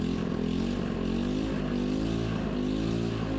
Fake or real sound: real